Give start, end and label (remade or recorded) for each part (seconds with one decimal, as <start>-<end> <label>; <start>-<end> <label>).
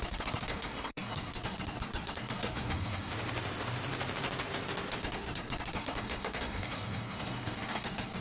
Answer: 0.0-3.1 remade; 3.1-5.0 recorded; 5.0-8.2 remade